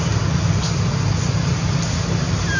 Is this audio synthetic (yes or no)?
no